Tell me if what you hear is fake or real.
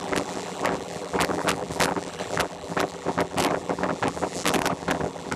fake